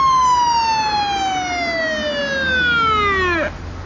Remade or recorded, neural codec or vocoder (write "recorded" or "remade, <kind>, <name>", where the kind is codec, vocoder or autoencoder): recorded